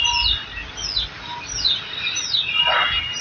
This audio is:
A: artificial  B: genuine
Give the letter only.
B